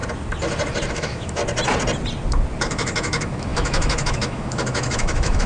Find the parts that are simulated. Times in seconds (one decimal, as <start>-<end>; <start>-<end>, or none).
0.9-1.4; 2.6-5.5

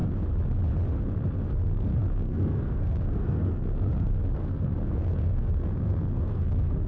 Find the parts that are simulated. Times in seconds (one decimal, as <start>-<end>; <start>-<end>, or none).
1.5-6.9

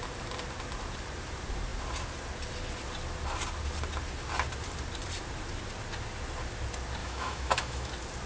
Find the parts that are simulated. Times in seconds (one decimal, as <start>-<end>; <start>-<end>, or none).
7.0-7.9

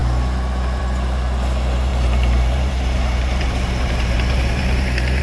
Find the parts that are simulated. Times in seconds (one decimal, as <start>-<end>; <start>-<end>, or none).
1.9-5.2

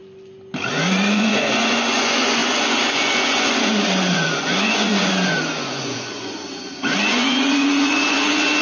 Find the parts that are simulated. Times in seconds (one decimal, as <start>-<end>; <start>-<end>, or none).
0.7-8.6

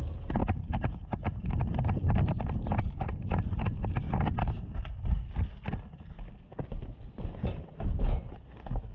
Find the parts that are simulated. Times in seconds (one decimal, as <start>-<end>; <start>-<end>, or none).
0.4-3.5

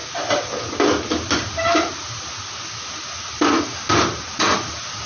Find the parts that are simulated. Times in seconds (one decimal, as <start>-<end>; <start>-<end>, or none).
none

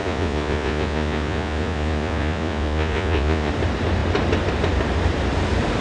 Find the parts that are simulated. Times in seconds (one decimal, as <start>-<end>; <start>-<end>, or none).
0.0-3.5